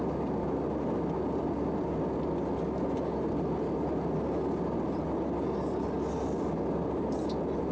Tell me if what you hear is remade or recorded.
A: recorded